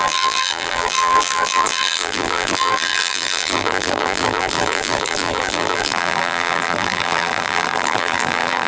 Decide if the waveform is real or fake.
fake